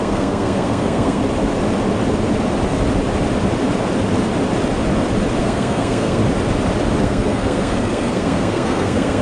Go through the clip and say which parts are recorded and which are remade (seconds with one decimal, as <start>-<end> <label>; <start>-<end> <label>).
0.0-1.2 remade; 1.2-5.4 recorded; 5.4-6.2 remade; 6.2-7.0 recorded; 7.0-9.2 remade